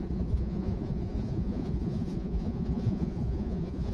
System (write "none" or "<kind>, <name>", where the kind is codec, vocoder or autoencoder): vocoder, Vocos